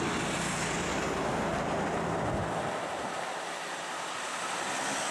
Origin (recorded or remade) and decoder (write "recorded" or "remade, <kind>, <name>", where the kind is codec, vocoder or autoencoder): recorded